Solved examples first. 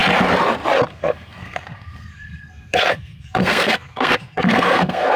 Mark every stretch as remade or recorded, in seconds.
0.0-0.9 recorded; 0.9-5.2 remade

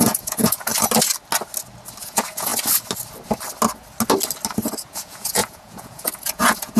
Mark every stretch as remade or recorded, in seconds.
0.0-0.7 remade; 0.7-2.0 recorded; 2.0-2.5 remade; 2.5-4.8 recorded; 4.8-6.8 remade

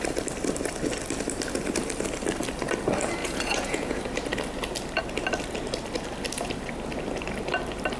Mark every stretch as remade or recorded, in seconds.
0.0-3.2 recorded; 3.2-4.0 remade; 4.0-8.0 recorded